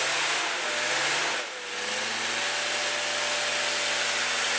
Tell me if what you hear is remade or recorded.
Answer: recorded